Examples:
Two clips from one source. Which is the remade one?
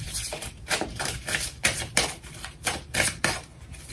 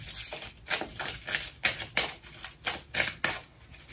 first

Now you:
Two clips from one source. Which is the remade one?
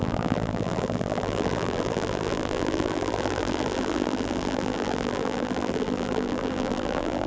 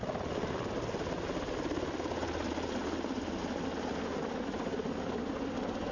first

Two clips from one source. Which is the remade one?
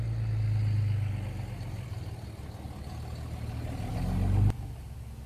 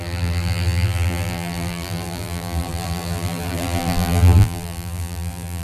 second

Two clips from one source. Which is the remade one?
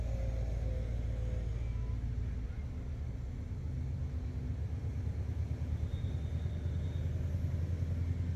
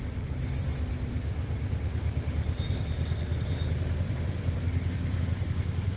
second